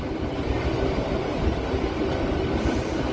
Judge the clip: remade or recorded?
recorded